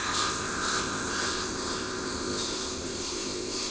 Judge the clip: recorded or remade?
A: remade